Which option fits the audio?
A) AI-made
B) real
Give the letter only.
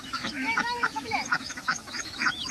A